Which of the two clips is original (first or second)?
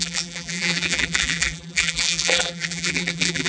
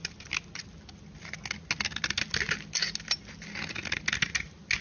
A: second